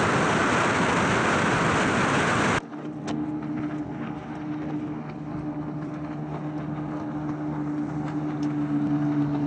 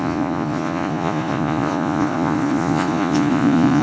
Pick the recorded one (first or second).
first